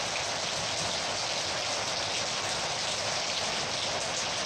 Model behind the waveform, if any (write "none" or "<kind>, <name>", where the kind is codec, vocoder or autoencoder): none